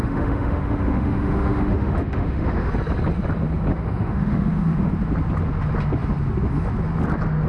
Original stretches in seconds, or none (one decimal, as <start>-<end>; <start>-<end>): 2.7-3.7; 4.9-7.5